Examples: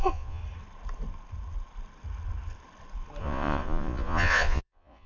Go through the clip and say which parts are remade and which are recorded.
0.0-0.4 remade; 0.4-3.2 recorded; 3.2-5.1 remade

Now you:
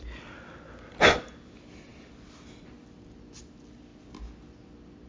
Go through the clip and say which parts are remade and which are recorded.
0.0-5.1 recorded

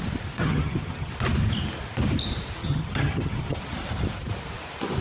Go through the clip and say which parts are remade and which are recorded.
0.0-0.4 recorded; 0.4-1.1 remade; 1.1-2.6 recorded; 2.6-3.6 remade; 3.6-5.0 recorded

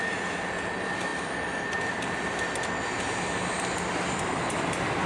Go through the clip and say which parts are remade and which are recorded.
0.0-1.1 remade; 1.1-4.2 recorded; 4.2-5.1 remade

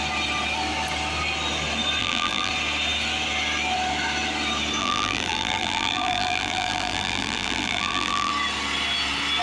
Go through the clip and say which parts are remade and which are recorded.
0.0-2.0 recorded; 2.0-2.5 remade; 2.5-4.8 recorded; 4.8-8.3 remade; 8.3-9.4 recorded

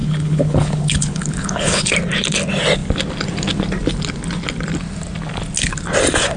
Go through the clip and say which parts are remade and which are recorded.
0.0-1.9 remade; 1.9-6.4 recorded